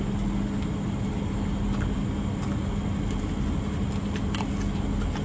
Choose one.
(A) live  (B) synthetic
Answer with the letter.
A